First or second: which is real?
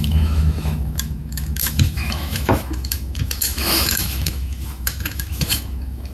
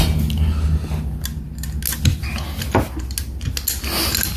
second